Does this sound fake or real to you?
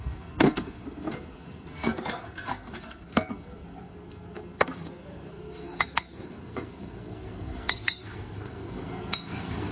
fake